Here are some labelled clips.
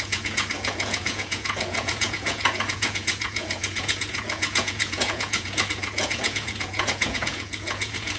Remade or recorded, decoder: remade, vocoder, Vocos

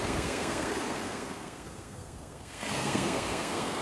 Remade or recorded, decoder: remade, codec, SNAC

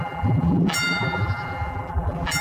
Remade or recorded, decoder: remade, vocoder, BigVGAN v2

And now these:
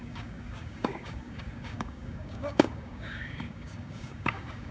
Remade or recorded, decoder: remade, codec, DAC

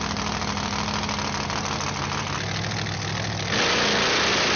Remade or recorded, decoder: recorded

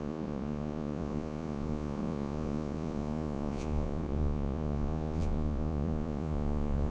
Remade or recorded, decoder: remade, vocoder, Vocos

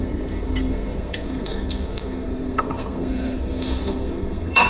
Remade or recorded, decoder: remade, codec, SNAC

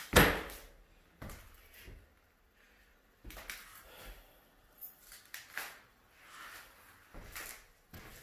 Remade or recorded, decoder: recorded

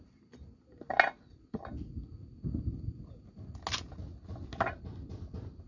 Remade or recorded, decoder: recorded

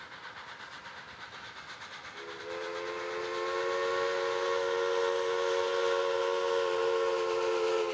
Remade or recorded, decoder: recorded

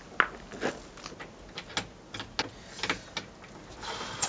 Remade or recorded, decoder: recorded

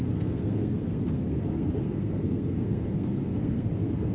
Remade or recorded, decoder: remade, codec, SNAC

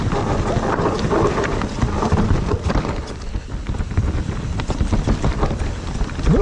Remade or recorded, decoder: remade, vocoder, BigVGAN v2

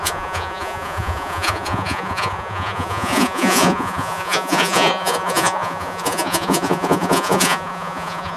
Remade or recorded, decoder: remade, vocoder, Vocos